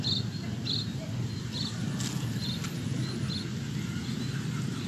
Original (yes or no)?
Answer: yes